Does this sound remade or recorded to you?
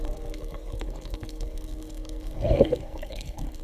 remade